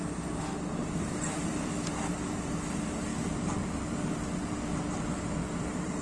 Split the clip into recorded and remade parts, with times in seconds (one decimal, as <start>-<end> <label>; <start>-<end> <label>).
0.0-0.6 recorded; 0.6-3.1 remade; 3.1-5.6 recorded; 5.6-6.0 remade